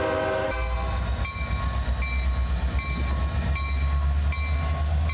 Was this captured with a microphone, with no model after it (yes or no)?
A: yes